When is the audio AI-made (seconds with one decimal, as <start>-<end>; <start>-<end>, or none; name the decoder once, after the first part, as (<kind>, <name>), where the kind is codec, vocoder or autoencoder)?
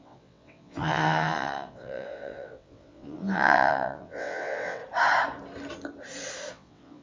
0.0-4.8 (vocoder, WaveNeXt); 6.5-7.0